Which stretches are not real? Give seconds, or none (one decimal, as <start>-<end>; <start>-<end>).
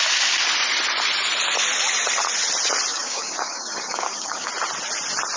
2.9-4.5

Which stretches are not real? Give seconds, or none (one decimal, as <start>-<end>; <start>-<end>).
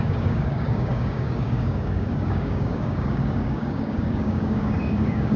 0.0-5.4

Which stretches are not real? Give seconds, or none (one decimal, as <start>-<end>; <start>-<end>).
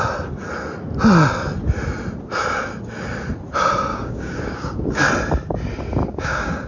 3.9-5.1; 6.0-6.7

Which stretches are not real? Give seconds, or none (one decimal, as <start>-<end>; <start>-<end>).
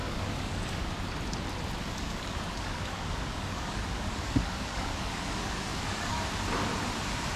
0.0-0.9; 1.8-6.2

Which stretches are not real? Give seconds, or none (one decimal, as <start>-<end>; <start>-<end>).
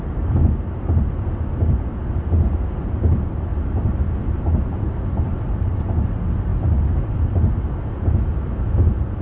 none